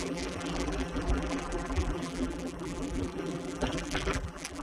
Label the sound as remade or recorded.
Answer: remade